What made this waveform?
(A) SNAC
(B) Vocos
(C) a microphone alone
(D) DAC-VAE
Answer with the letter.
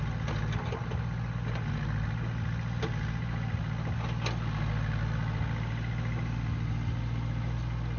C